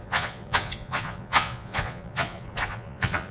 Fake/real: fake